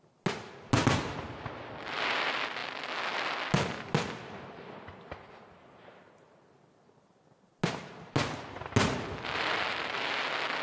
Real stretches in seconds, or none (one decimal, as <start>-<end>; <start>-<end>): 0.0-10.6